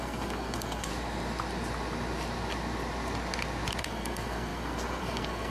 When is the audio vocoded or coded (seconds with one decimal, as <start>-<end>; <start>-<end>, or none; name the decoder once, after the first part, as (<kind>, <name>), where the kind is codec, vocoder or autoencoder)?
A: 0.0-0.9 (codec, SNAC); 3.8-5.5